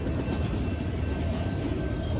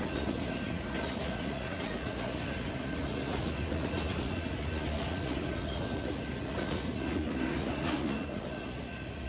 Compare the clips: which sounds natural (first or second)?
first